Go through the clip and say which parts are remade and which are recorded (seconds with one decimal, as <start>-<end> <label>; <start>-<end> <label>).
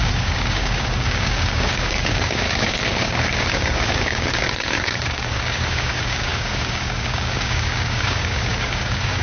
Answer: 0.0-9.2 remade